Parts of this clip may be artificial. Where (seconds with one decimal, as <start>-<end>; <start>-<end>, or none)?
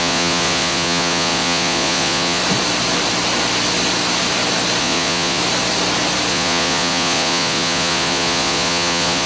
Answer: 0.0-2.4; 4.8-5.4; 6.3-9.3